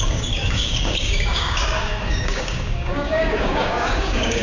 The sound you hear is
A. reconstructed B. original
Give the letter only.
A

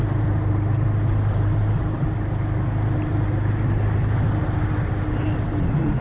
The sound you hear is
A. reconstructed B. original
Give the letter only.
B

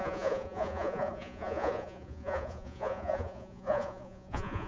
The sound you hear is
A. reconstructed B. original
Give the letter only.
A